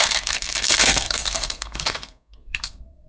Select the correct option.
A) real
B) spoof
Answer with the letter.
B